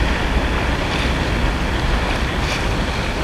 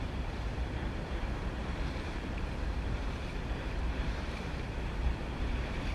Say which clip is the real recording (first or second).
first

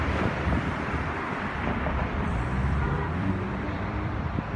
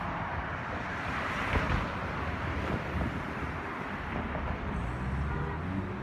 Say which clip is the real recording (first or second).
second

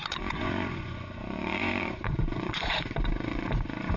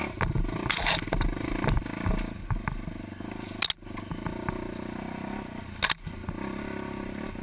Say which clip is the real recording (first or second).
second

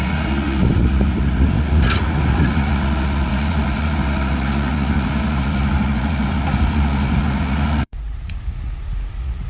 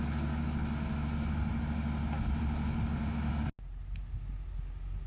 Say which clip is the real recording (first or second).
second